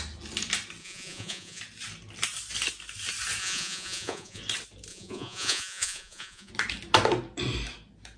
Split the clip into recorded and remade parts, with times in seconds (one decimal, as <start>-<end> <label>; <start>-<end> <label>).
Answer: 0.0-0.8 recorded; 0.8-1.6 remade; 1.6-3.4 recorded; 3.4-4.4 remade; 4.4-4.9 recorded; 4.9-6.5 remade; 6.5-8.2 recorded